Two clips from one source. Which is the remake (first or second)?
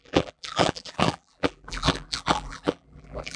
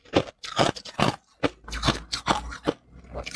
first